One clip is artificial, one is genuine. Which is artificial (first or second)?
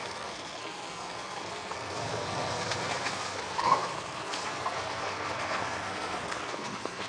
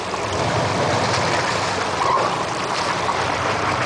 first